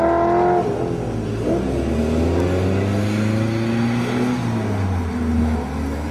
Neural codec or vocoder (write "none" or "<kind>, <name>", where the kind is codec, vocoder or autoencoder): none